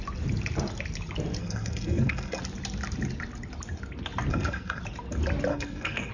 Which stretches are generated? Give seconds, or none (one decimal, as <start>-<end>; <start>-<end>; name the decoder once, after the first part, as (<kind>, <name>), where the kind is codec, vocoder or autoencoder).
1.4-2.4 (codec, SNAC); 4.3-4.8; 5.5-6.1